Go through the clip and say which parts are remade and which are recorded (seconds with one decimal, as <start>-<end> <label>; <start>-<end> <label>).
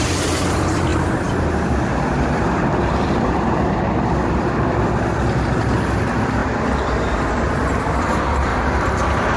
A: 0.0-0.9 remade; 0.9-1.9 recorded; 1.9-6.4 remade; 6.4-7.4 recorded; 7.4-8.5 remade; 8.5-9.4 recorded